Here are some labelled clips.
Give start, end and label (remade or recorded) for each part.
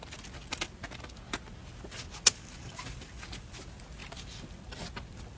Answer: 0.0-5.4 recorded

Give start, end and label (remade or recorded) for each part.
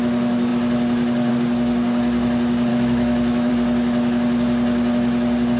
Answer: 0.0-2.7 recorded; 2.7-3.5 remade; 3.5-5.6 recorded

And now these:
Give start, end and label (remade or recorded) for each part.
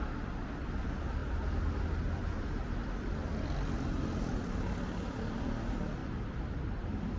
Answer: 0.0-7.2 recorded